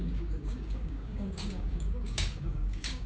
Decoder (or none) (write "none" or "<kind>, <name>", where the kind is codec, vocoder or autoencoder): codec, DAC